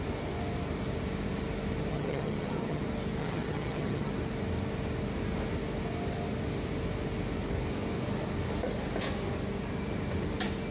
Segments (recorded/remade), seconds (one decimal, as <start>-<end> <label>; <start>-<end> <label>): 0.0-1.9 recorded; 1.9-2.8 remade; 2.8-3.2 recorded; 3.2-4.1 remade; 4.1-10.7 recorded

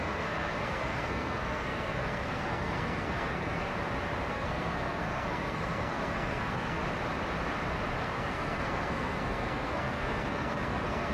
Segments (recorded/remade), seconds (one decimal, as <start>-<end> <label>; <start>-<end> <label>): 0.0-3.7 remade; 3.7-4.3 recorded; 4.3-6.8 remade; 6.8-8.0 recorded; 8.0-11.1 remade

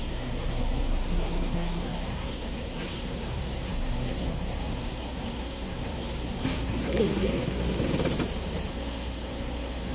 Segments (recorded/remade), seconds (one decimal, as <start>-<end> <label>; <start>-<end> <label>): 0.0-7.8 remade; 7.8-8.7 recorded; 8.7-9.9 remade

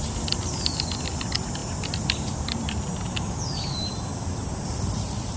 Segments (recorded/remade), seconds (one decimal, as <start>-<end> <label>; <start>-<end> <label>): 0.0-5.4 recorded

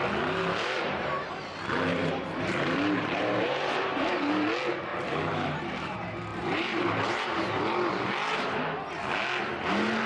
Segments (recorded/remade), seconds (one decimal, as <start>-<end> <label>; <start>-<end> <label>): 0.0-1.3 remade; 1.3-1.9 recorded; 1.9-4.1 remade; 4.1-4.9 recorded; 4.9-5.6 remade; 5.6-6.3 recorded; 6.3-7.9 remade; 7.9-10.1 recorded

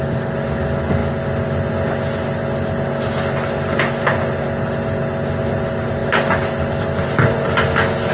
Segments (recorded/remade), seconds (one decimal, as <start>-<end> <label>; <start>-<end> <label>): 0.0-8.1 recorded

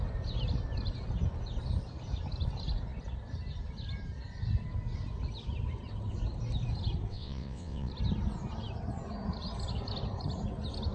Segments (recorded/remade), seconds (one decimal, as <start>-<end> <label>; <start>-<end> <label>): 0.0-7.1 recorded; 7.1-7.9 remade; 7.9-10.9 recorded

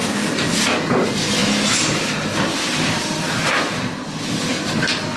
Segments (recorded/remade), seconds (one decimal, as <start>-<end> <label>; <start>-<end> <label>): 0.0-5.2 recorded